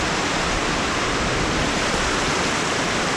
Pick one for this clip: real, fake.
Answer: fake